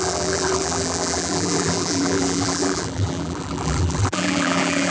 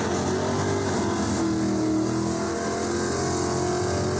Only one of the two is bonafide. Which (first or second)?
second